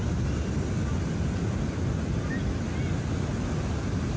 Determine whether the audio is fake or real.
real